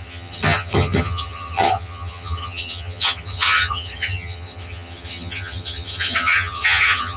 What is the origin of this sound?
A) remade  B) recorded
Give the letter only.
A